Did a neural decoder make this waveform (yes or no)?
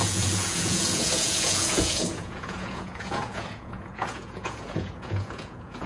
yes